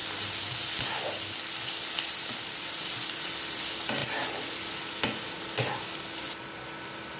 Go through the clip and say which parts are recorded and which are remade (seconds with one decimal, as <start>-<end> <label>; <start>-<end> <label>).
0.0-7.2 recorded